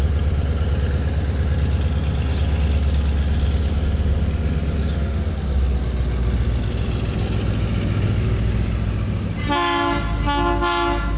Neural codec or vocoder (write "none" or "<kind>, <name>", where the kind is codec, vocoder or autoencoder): none